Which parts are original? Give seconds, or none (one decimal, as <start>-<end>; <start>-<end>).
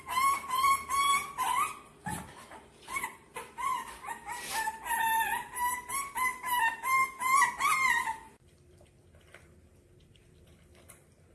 6.3-7.5